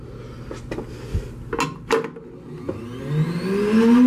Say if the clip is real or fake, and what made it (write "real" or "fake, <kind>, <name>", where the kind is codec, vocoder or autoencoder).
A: real